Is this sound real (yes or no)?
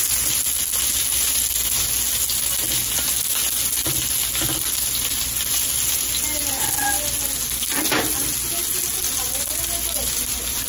yes